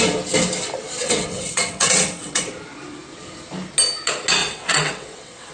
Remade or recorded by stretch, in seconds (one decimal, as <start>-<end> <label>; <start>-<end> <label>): 0.0-1.0 recorded; 1.0-2.5 remade; 2.5-4.4 recorded; 4.4-5.5 remade